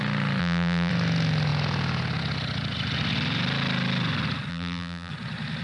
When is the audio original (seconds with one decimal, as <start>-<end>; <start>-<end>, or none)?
0.0-0.4; 0.9-4.5; 5.1-5.6